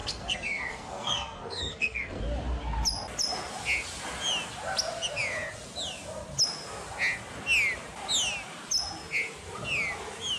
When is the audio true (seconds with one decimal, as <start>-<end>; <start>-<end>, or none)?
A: 2.2-10.4